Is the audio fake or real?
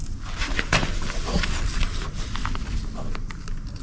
real